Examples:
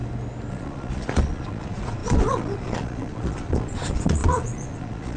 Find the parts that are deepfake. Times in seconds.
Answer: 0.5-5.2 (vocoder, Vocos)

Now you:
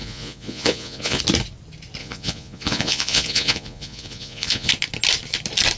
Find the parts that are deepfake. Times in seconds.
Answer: 0.0-1.2 (vocoder, Vocos); 2.0-4.7

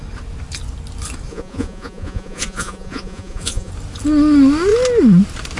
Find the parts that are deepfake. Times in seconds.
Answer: 1.3-3.7 (vocoder, Vocos)

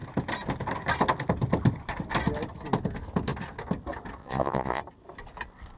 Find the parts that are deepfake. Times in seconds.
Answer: 4.2-4.8 (vocoder, Vocos)

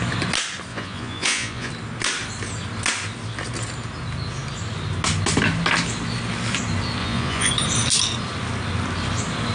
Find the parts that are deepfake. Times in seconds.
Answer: 0.7-1.7 (vocoder, Vocos); 7.0-7.5

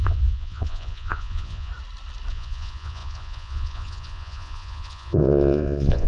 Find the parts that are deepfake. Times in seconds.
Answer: 0.0-1.7 (vocoder, Vocos); 2.3-6.1

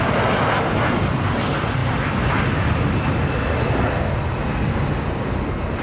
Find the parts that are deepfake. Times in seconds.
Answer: none

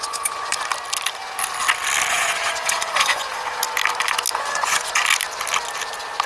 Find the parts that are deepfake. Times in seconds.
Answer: 0.0-0.5 (vocoder, Vocos); 2.1-3.6; 4.3-5.0